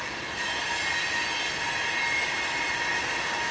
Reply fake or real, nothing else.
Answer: real